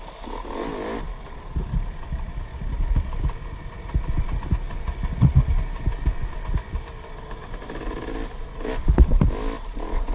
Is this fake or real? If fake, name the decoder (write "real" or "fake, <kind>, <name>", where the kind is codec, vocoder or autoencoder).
real